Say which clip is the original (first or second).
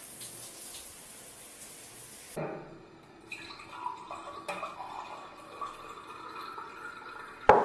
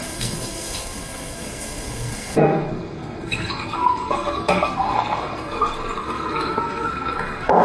first